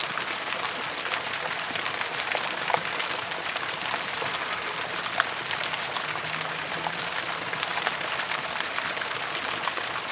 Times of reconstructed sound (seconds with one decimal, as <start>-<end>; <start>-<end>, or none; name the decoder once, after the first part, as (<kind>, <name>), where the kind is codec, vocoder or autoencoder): 7.7-8.4 (vocoder, BigVGAN v2)